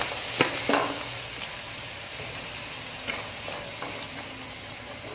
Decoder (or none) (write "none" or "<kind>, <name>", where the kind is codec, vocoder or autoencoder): none